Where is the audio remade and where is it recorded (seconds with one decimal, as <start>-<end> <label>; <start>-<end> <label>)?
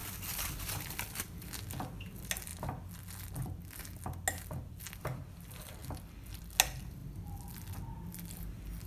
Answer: 0.0-8.9 recorded